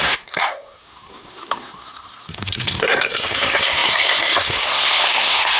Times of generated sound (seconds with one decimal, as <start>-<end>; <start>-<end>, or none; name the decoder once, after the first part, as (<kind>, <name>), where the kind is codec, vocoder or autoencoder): 0.0-5.6 (codec, SNAC)